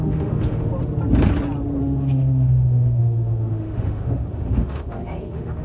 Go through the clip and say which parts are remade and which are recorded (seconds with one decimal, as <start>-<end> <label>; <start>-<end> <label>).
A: 0.0-0.7 remade; 0.7-1.8 recorded; 1.8-5.6 remade